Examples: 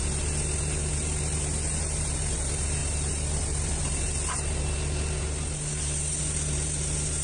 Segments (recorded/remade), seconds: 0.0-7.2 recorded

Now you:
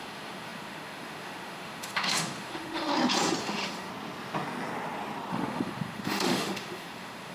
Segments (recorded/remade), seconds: 0.0-2.9 remade; 2.9-3.4 recorded; 3.4-3.9 remade; 3.9-5.3 recorded; 5.3-7.3 remade

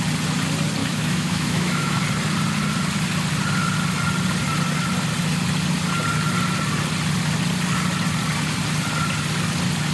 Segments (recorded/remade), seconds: 0.0-0.8 recorded; 0.8-2.0 remade; 2.0-9.9 recorded

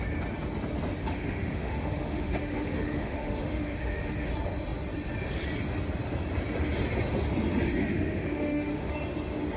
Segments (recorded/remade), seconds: 0.0-1.0 recorded; 1.0-4.3 remade; 4.3-7.8 recorded; 7.8-8.9 remade; 8.9-9.6 recorded

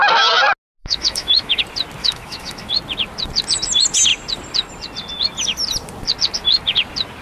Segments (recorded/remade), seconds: 0.0-0.8 recorded; 0.8-1.6 remade; 1.6-2.0 recorded; 2.0-2.7 remade; 2.7-7.2 recorded

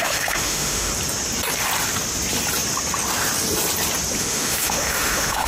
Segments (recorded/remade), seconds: 0.0-0.9 remade; 0.9-4.2 recorded; 4.2-5.5 remade

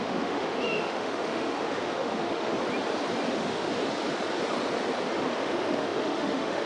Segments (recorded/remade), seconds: 0.0-2.5 remade; 2.5-3.3 recorded; 3.3-3.7 remade; 3.7-5.4 recorded; 5.4-6.7 remade

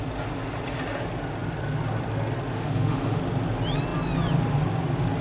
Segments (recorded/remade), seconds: 0.0-2.5 recorded; 2.5-3.2 remade; 3.2-5.2 recorded